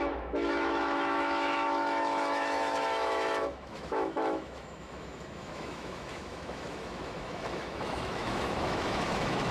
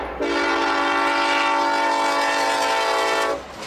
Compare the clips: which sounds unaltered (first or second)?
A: second